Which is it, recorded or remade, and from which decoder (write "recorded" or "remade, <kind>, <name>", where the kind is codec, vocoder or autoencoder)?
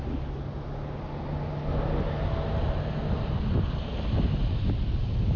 recorded